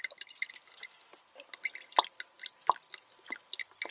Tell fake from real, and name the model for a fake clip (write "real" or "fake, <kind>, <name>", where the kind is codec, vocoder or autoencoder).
real